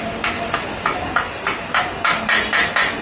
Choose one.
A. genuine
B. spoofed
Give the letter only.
A